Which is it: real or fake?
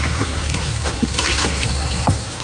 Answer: fake